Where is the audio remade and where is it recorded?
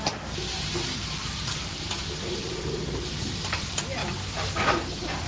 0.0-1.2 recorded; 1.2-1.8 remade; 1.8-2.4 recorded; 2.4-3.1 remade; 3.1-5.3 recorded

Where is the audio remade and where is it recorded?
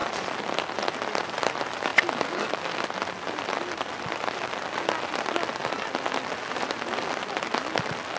0.0-1.5 remade; 1.5-8.2 recorded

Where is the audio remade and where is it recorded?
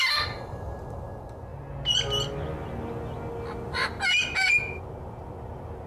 0.0-5.9 recorded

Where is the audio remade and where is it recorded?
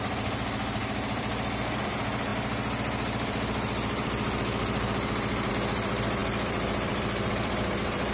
0.0-8.1 remade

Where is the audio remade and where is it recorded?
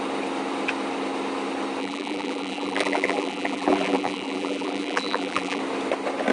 0.0-1.8 recorded; 1.8-5.6 remade; 5.6-6.3 recorded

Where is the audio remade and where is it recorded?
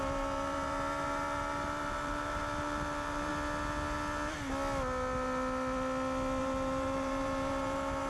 0.0-3.3 remade; 3.3-6.4 recorded; 6.4-8.1 remade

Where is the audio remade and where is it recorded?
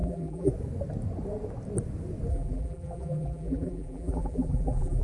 0.0-0.5 remade; 0.5-2.3 recorded; 2.3-5.0 remade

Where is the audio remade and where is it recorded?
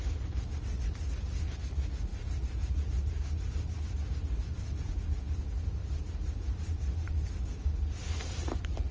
0.0-2.1 recorded; 2.1-4.9 remade; 4.9-5.8 recorded; 5.8-8.9 remade